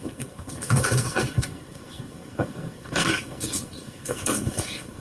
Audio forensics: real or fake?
fake